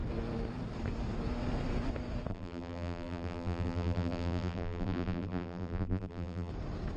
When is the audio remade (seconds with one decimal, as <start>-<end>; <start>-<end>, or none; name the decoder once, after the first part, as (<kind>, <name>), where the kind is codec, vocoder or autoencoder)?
2.3-6.5 (vocoder, BigVGAN v2)